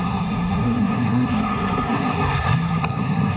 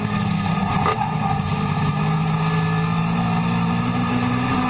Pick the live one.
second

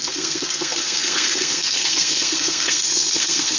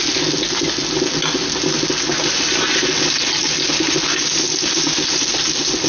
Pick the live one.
second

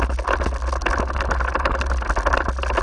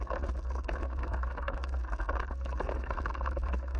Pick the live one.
first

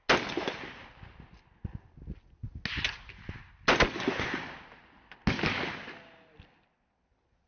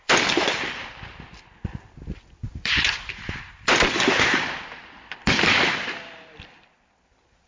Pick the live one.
first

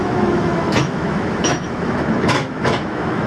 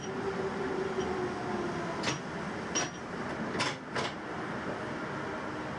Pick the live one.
second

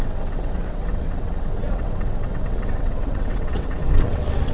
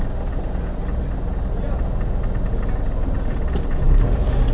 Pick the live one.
second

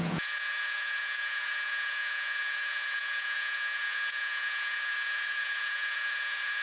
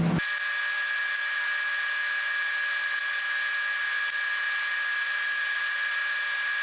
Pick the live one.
second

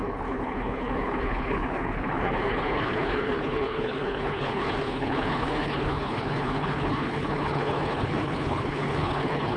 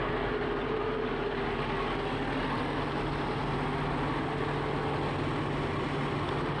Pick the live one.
second